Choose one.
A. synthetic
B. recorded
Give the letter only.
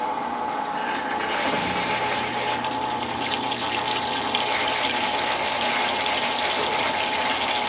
B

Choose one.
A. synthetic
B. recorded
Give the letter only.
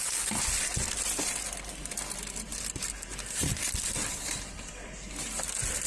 B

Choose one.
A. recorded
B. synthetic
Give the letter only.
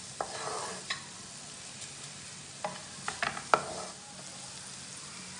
A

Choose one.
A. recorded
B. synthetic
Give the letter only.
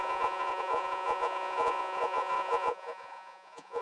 B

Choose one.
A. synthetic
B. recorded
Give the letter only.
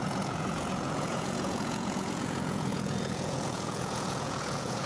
A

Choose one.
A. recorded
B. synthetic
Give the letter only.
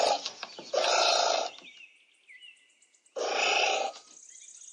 A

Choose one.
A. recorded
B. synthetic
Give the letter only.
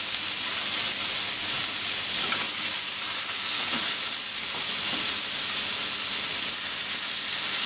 A